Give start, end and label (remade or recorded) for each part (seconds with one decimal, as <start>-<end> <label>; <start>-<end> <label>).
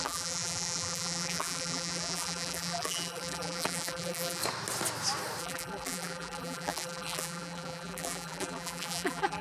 0.0-4.4 remade; 4.4-5.4 recorded; 5.4-9.4 remade